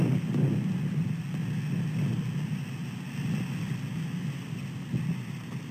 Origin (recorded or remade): recorded